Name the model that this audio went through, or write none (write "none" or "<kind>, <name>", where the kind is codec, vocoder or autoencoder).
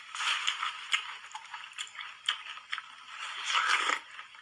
none